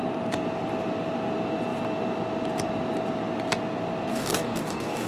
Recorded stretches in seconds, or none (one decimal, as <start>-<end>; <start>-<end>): 0.0-4.1